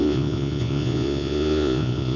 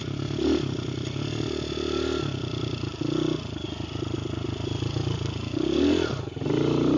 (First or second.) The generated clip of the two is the first